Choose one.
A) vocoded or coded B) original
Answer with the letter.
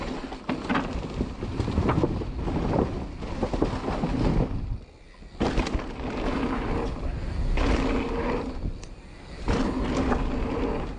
B